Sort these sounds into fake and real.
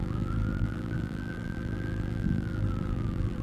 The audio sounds fake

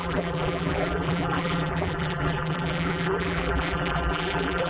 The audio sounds fake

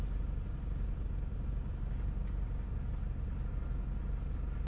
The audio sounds real